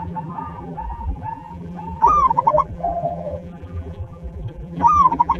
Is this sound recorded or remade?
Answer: remade